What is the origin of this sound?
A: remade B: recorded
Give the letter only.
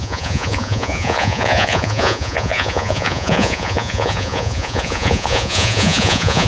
A